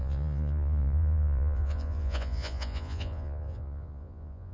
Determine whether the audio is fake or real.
fake